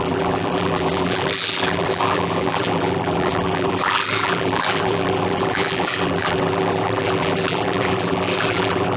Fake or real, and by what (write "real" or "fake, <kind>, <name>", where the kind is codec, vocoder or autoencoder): fake, vocoder, BigVGAN v2